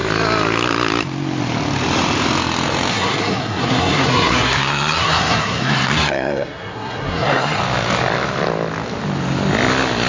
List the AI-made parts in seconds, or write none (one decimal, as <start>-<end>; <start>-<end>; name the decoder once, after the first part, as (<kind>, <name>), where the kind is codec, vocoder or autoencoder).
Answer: 2.9-7.6 (codec, SNAC)